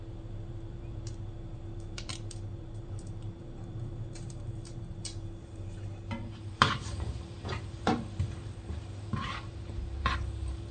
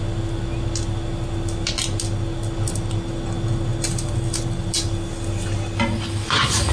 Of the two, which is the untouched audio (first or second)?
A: second